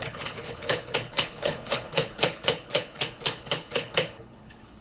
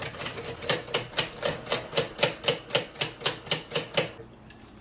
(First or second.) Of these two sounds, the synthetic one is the first